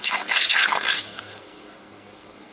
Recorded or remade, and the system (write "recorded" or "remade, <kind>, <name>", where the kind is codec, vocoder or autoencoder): remade, codec, SNAC